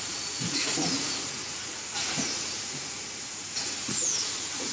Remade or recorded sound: remade